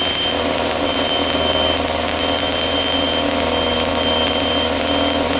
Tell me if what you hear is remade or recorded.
recorded